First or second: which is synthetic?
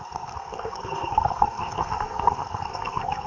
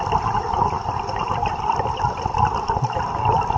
first